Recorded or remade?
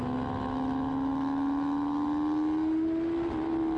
recorded